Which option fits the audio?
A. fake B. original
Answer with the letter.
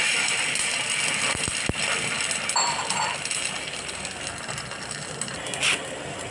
B